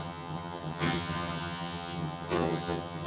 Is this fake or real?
fake